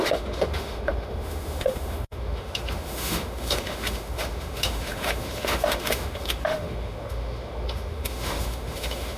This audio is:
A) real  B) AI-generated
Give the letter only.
B